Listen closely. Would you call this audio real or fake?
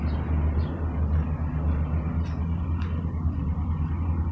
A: real